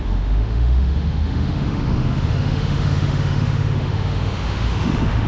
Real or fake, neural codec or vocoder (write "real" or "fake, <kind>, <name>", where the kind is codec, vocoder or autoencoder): fake, autoencoder, DAC-VAE